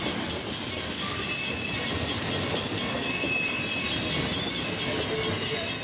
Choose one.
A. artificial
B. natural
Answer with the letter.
B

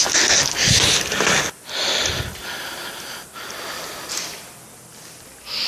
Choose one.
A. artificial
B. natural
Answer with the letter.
B